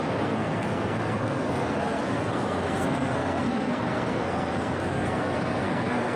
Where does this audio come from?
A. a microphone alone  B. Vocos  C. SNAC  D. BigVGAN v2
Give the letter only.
C